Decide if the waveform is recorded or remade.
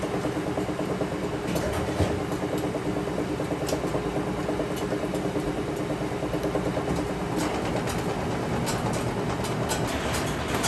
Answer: recorded